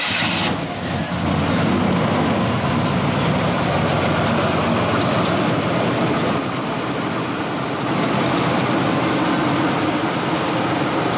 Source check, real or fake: real